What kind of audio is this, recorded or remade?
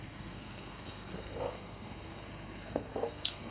remade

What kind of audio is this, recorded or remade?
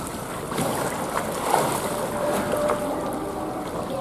recorded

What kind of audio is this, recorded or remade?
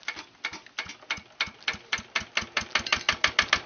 recorded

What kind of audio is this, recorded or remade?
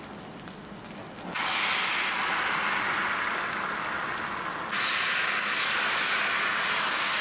recorded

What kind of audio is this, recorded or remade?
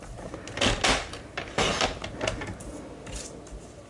recorded